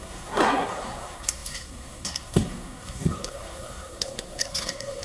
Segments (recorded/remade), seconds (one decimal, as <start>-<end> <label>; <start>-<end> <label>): 0.0-5.0 remade